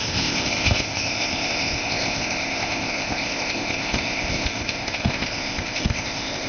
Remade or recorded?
remade